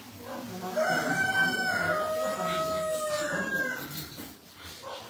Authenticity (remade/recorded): recorded